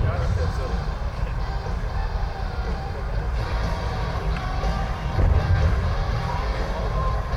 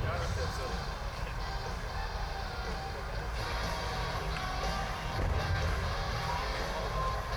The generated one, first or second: first